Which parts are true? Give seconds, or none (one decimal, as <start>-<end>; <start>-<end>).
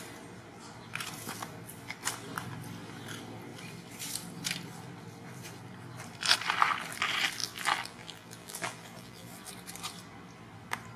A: 0.0-7.4; 9.5-11.0